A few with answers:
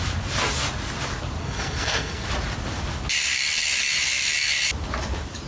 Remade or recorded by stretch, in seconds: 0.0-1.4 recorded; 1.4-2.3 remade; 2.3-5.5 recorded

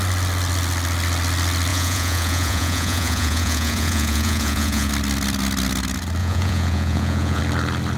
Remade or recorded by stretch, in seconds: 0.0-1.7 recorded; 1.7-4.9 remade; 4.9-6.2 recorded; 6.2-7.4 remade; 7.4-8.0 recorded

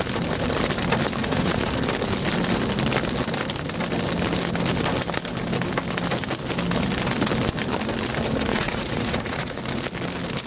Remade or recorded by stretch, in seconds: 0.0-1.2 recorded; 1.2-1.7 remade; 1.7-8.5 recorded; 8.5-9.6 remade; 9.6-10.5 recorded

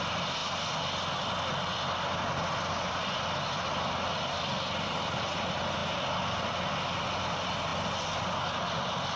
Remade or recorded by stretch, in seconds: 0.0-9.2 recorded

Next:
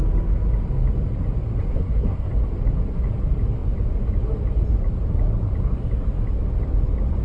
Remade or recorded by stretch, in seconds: 0.0-1.6 recorded; 1.6-2.3 remade; 2.3-7.2 recorded

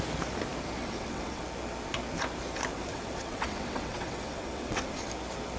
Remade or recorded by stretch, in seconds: 0.0-0.8 recorded; 0.8-1.4 remade; 1.4-2.7 recorded; 2.7-5.1 remade; 5.1-5.6 recorded

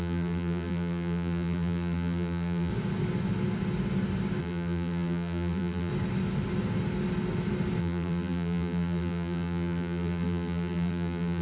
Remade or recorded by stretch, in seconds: 0.0-2.7 remade; 2.7-4.4 recorded; 4.4-5.9 remade; 5.9-7.8 recorded; 7.8-11.4 remade

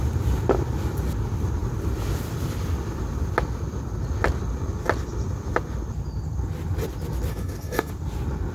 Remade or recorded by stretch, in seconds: 0.0-7.3 recorded; 7.3-7.9 remade; 7.9-8.5 recorded